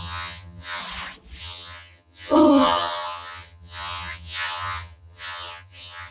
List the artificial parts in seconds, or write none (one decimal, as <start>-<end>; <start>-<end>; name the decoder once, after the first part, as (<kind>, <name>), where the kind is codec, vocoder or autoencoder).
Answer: 0.0-0.8 (vocoder, HiFi-GAN); 1.4-6.1